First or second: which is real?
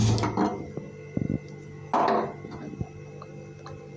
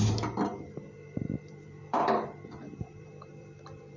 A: first